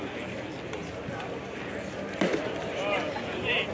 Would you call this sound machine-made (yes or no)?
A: no